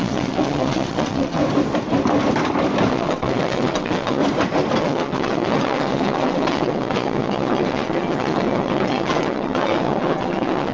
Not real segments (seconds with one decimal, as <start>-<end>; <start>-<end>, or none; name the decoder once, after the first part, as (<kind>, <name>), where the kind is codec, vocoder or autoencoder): 0.0-1.4 (vocoder, WaveNeXt); 2.9-4.2; 4.8-10.7